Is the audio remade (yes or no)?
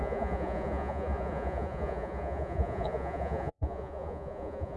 yes